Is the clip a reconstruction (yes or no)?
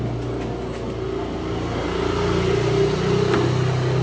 no